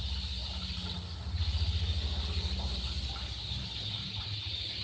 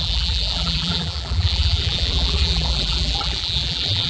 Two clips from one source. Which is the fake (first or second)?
second